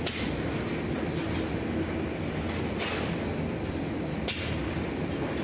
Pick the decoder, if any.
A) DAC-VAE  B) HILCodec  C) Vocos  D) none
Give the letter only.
D